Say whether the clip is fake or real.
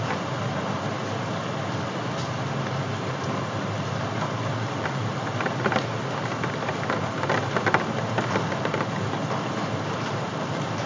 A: real